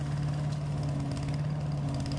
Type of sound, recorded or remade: recorded